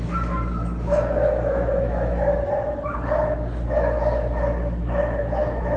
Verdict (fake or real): fake